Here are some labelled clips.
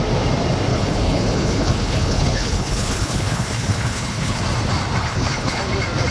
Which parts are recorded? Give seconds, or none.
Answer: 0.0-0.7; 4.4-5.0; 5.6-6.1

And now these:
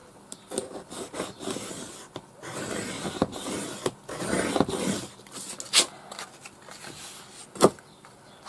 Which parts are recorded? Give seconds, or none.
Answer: 0.0-8.5

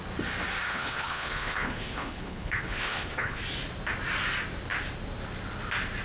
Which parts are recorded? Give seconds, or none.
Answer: 0.0-0.7; 3.4-6.0

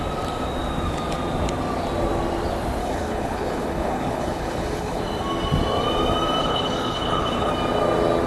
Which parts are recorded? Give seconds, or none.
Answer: 0.0-2.8; 5.0-6.4; 7.5-8.3

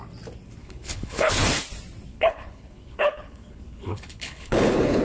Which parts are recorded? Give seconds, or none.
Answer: 0.0-0.6; 1.4-2.1